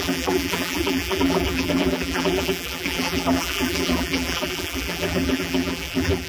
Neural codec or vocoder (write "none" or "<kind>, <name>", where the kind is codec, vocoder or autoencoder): vocoder, BigVGAN v2